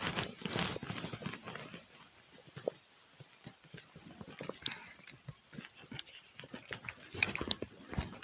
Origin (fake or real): real